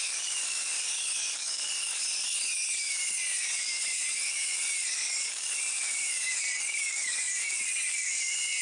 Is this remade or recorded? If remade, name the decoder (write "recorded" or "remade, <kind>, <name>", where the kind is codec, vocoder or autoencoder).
remade, codec, DAC